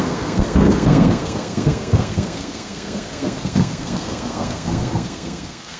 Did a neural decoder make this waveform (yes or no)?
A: yes